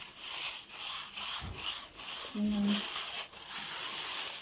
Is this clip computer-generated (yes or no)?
no